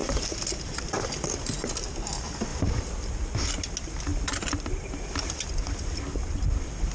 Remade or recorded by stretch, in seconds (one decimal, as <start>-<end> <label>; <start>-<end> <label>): 0.0-1.0 remade; 1.0-2.5 recorded; 2.5-3.2 remade; 3.2-4.1 recorded; 4.1-5.5 remade; 5.5-6.9 recorded